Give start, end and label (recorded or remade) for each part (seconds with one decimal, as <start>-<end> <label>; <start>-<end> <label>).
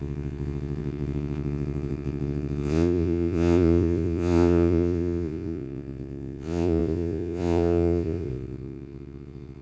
0.0-9.6 remade